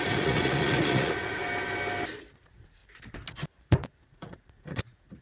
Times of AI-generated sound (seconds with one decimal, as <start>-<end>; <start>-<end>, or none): 0.0-1.4; 2.4-2.8; 3.7-5.2